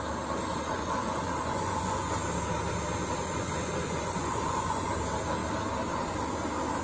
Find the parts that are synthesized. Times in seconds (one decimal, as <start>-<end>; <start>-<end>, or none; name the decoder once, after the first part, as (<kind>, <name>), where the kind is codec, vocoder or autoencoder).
0.5-2.1 (vocoder, Vocos); 3.2-4.9